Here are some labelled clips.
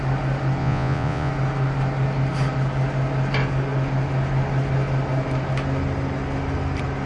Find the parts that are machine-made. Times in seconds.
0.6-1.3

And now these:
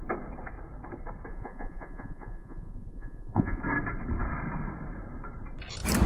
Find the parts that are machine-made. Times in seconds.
1.3-3.6

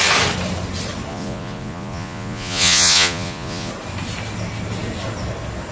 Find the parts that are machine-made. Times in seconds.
1.1-3.7

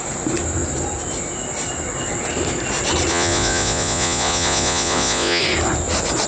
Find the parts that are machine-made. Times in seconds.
3.1-5.4

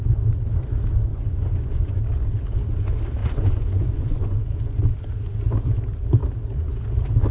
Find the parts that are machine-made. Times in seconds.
1.1-2.0; 3.2-4.8

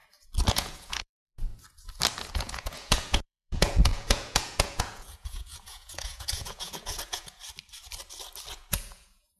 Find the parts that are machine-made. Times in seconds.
0.5-1.5; 2.3-7.4; 8.5-9.4

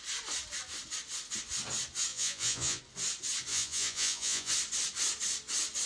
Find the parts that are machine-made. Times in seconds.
2.1-2.8; 3.5-4.5